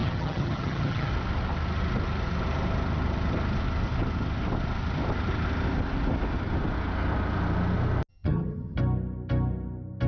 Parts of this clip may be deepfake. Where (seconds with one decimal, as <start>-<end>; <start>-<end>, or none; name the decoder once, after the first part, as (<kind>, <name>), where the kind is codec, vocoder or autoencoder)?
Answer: 0.0-1.1 (vocoder, HiFi-GAN); 8.1-8.8